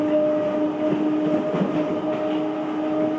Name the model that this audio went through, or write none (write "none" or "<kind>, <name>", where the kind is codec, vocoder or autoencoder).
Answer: none